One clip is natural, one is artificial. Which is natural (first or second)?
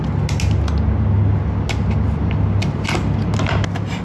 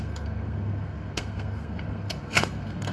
first